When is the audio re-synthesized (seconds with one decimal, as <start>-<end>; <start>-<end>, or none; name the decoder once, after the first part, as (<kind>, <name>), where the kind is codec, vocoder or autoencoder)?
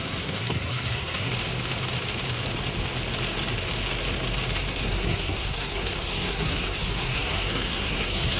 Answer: 0.0-1.3 (codec, SNAC); 4.7-8.4